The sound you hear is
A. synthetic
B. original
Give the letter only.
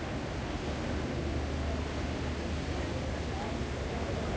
B